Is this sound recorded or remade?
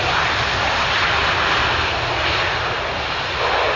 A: recorded